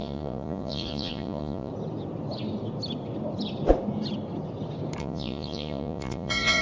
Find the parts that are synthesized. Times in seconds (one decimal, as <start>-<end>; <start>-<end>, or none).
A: 0.0-1.7; 5.0-6.6